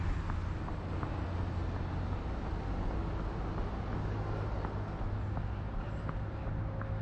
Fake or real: real